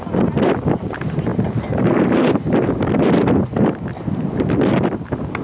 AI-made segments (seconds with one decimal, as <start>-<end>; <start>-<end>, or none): none